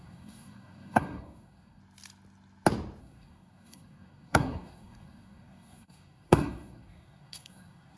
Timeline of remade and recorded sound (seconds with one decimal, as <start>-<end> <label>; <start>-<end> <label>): 0.0-1.8 remade; 1.8-3.0 recorded; 3.0-8.0 remade